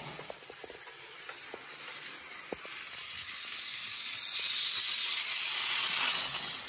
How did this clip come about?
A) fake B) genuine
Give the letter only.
B